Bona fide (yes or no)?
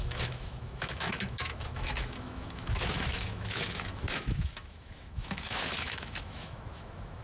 no